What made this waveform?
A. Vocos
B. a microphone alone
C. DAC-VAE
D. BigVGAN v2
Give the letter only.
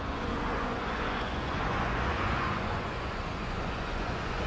A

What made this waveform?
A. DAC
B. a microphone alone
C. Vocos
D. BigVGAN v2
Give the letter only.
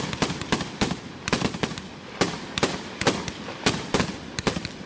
B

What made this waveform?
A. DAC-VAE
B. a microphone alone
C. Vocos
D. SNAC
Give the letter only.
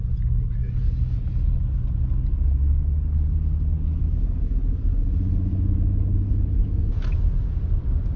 B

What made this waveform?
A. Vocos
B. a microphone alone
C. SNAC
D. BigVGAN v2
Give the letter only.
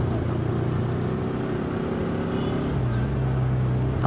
B